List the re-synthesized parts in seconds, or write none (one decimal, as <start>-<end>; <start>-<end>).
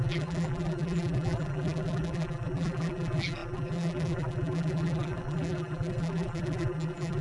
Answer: 0.0-7.2